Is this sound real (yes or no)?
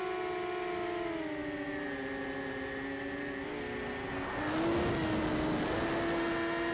yes